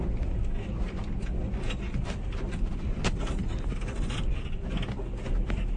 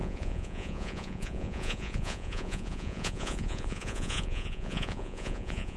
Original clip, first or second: first